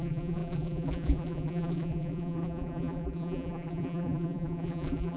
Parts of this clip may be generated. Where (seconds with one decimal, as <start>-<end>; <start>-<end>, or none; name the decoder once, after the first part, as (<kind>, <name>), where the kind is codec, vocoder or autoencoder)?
0.0-5.2 (vocoder, BigVGAN v2)